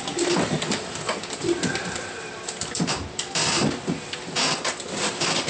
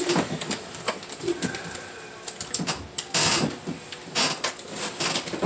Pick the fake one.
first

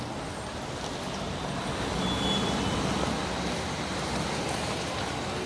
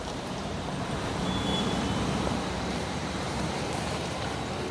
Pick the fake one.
second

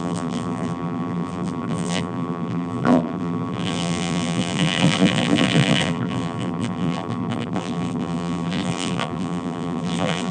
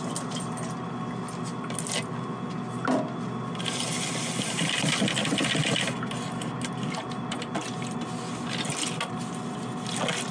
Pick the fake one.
first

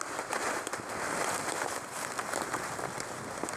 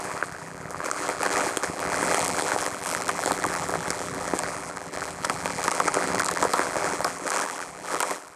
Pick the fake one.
second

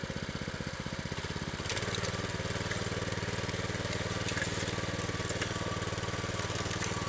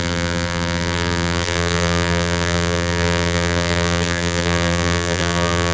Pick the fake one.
second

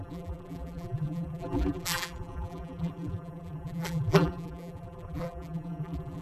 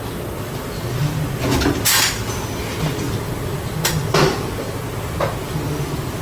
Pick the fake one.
first